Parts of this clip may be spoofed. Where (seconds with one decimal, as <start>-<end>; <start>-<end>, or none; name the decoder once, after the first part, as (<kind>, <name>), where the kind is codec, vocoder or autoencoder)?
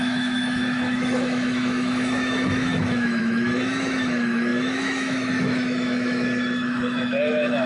0.0-7.7 (autoencoder, DAC-VAE)